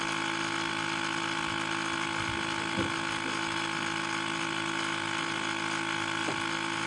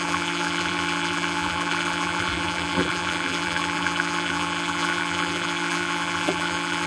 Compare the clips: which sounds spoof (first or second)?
second